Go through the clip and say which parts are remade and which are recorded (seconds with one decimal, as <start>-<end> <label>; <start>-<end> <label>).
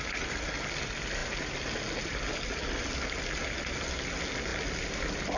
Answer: 0.0-5.4 recorded